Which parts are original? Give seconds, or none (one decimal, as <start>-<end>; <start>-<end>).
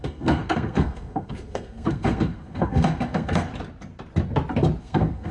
3.5-4.8